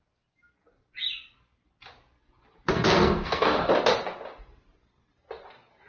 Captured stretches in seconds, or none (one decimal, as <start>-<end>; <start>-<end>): 0.0-2.7; 3.7-5.9